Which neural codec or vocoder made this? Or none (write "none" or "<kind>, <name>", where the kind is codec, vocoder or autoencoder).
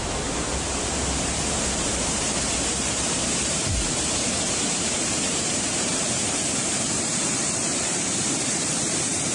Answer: vocoder, BigVGAN v2